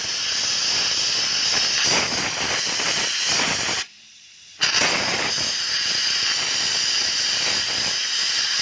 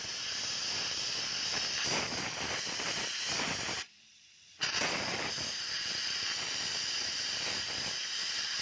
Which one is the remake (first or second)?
second